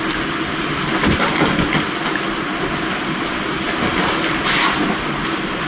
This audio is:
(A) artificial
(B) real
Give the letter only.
B